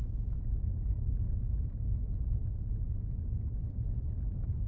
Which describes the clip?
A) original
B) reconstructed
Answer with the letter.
A